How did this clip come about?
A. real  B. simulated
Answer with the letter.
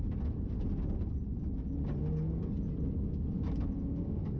A